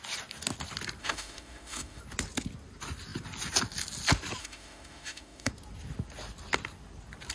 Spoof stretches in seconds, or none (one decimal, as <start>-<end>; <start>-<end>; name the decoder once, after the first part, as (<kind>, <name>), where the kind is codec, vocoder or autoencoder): 1.0-2.0 (autoencoder, DAC-VAE); 4.4-5.5